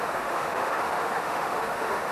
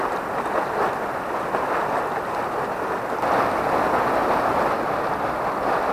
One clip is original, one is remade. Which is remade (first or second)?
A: first